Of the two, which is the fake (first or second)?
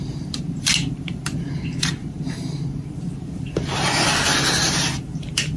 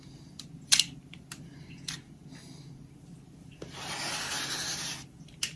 first